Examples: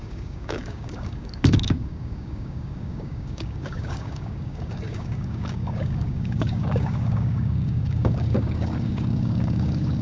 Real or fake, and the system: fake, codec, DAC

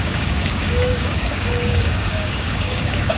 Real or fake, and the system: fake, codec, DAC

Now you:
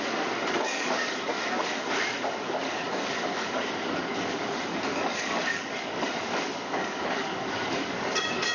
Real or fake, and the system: fake, codec, DAC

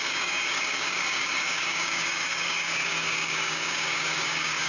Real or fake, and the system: fake, codec, DAC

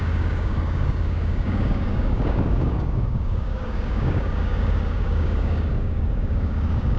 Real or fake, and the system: fake, codec, DAC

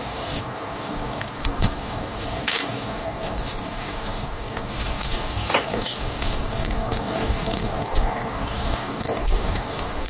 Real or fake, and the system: fake, codec, DAC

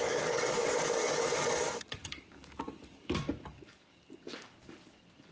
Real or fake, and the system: fake, codec, DAC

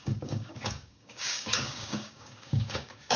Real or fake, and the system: fake, codec, DAC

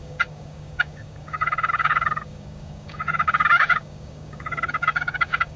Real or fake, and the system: fake, codec, DAC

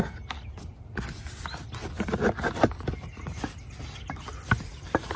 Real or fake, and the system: real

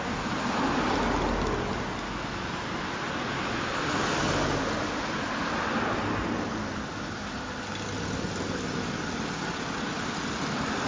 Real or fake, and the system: real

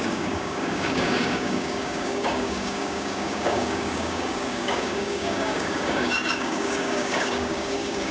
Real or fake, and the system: fake, codec, DAC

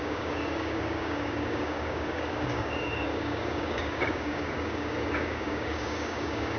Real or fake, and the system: fake, codec, DAC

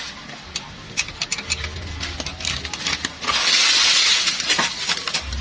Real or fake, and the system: real